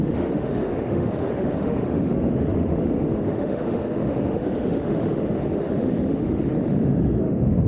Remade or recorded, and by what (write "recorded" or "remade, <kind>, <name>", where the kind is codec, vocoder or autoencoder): remade, autoencoder, DAC-VAE